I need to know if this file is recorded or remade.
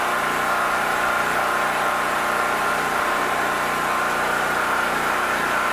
recorded